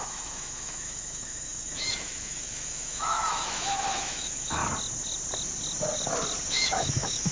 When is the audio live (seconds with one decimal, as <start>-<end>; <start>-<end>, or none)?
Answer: 4.6-6.5